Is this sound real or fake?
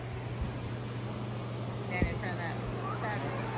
real